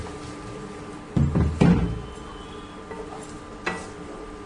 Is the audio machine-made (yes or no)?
no